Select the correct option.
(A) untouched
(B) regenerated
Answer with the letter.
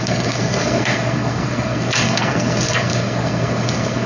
B